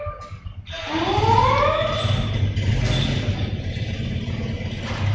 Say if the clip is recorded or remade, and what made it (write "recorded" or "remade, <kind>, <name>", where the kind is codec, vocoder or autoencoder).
recorded